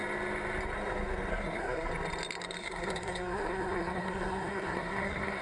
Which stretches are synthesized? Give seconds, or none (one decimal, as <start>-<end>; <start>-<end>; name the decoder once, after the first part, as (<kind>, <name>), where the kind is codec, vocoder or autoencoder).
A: 1.3-1.9 (codec, SNAC); 2.6-5.4